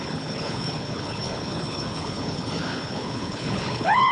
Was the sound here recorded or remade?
remade